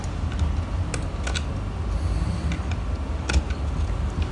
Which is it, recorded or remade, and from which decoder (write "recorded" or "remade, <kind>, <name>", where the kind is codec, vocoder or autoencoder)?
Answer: recorded